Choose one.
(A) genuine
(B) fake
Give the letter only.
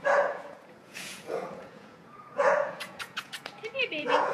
B